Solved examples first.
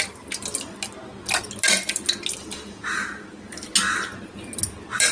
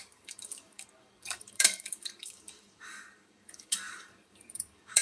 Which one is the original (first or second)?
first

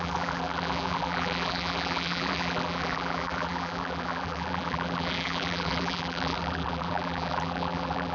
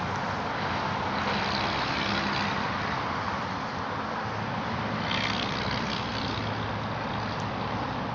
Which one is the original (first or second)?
second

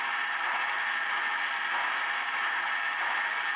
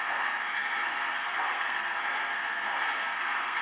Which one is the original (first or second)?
first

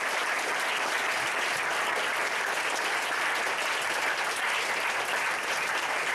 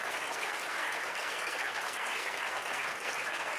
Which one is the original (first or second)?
first